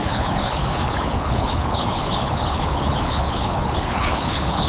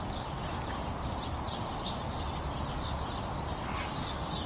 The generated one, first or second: first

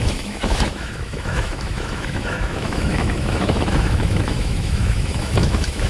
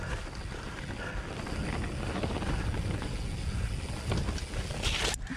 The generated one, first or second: first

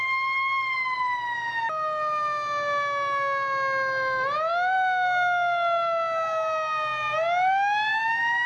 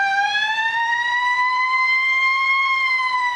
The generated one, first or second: second